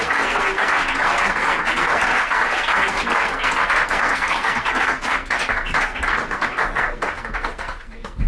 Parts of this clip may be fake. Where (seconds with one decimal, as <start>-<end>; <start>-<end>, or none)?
0.0-8.3